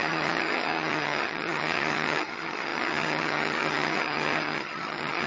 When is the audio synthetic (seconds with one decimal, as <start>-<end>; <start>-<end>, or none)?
0.0-5.3